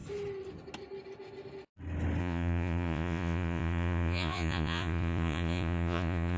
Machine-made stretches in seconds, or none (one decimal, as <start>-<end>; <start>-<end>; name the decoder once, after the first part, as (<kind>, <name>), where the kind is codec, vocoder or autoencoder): 2.2-6.4 (vocoder, Vocos)